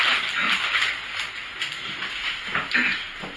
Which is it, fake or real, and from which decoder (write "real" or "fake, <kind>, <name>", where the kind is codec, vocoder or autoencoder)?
real